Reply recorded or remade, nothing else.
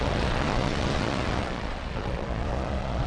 remade